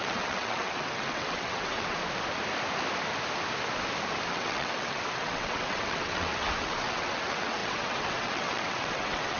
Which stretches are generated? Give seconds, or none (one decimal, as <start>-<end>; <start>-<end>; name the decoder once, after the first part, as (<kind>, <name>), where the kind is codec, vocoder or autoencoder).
0.0-2.0 (vocoder, WaveNeXt); 4.3-9.4